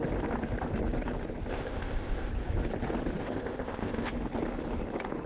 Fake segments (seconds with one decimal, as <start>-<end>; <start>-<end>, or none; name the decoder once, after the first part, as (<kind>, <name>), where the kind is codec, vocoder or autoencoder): 1.5-2.3 (codec, ZipCodec); 3.2-4.1